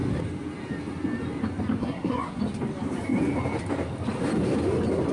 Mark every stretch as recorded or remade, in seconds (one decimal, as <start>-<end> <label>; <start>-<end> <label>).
0.0-1.8 recorded; 1.8-2.4 remade; 2.4-5.1 recorded